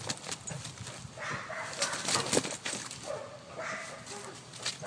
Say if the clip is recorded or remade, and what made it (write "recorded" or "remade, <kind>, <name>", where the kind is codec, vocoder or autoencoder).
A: recorded